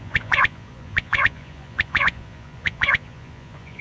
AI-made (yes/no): yes